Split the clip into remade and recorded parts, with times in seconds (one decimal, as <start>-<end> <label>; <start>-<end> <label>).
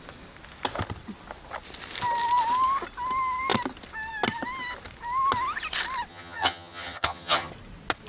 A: 0.0-6.1 recorded; 6.1-7.5 remade; 7.5-8.1 recorded